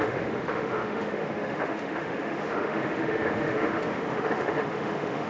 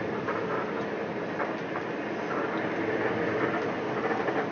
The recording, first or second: second